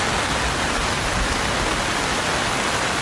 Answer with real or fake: real